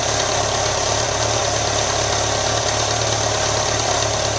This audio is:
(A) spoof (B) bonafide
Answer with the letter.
B